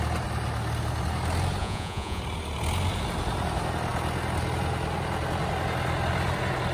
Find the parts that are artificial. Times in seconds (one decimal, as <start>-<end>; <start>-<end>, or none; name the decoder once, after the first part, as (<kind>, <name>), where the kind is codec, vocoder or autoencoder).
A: 1.6-2.2 (vocoder, Vocos)